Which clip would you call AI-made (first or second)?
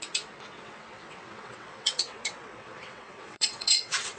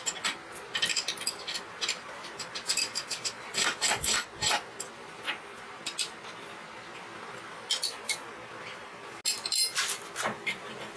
first